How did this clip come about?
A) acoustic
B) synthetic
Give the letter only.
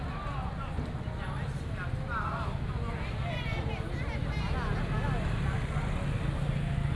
A